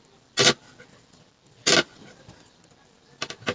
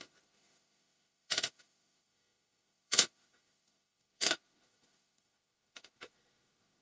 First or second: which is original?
first